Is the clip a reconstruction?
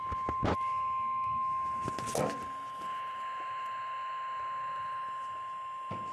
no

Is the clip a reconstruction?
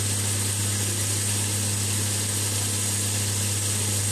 no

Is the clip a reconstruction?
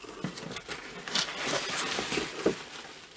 no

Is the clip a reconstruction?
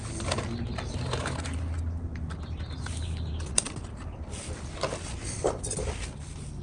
no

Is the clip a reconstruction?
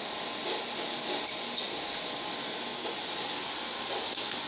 no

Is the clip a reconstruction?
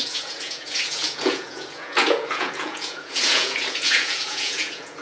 yes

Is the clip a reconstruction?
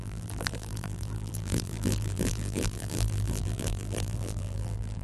yes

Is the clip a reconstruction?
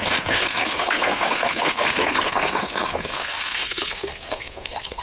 yes